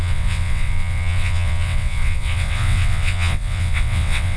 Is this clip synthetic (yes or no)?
yes